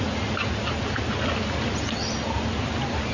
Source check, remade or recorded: recorded